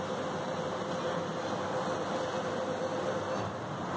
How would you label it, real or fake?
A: real